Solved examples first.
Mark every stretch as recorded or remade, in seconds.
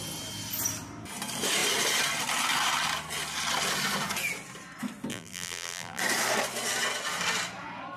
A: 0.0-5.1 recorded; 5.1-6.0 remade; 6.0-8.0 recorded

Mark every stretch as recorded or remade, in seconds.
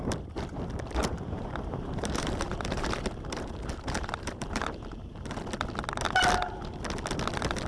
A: 0.0-1.0 recorded; 1.0-5.4 remade; 5.4-7.7 recorded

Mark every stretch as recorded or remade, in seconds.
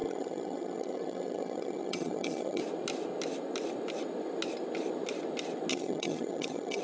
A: 0.0-2.6 remade; 2.6-5.7 recorded; 5.7-6.8 remade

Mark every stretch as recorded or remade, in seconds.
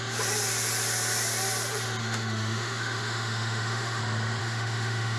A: 0.0-2.0 recorded; 2.0-4.0 remade; 4.0-4.4 recorded; 4.4-5.2 remade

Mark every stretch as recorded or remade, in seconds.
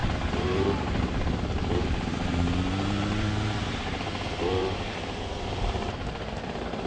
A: 0.0-6.9 remade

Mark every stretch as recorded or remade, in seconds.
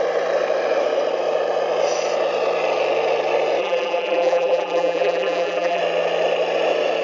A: 0.0-3.6 recorded; 3.6-5.8 remade; 5.8-7.0 recorded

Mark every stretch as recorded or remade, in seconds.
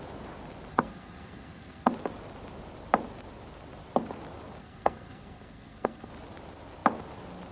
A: 0.0-0.7 recorded; 0.7-1.9 remade; 1.9-4.6 recorded; 4.6-6.1 remade; 6.1-7.5 recorded